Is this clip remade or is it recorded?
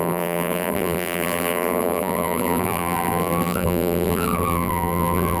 remade